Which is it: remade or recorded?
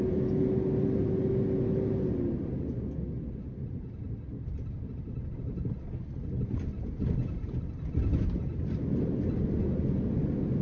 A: recorded